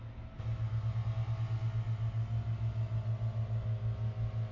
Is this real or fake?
real